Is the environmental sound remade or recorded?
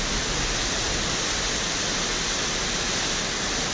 recorded